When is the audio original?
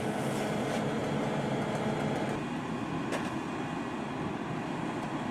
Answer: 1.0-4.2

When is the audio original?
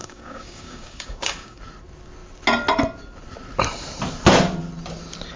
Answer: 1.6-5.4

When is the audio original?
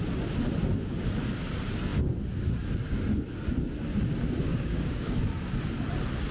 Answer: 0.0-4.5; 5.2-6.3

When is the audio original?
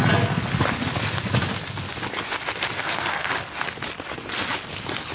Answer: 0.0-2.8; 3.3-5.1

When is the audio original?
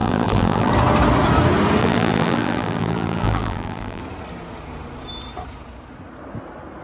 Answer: 0.7-1.8; 4.0-6.8